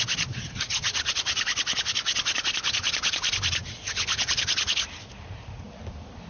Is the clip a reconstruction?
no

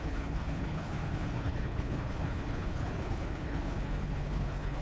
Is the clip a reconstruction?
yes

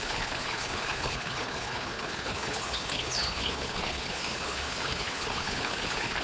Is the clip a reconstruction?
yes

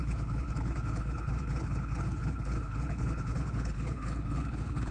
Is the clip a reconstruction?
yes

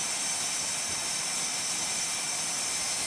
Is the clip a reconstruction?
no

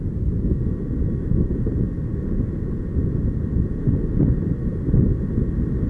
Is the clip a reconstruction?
no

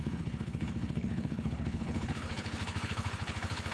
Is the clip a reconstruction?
yes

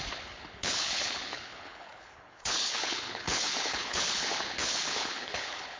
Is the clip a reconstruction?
yes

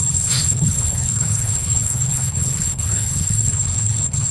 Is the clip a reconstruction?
yes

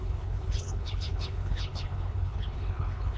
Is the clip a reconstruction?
yes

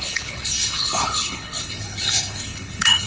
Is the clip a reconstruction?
yes